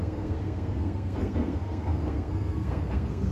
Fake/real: fake